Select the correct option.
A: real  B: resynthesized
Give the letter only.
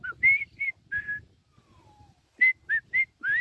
A